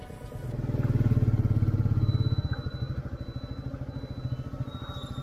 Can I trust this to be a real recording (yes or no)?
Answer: yes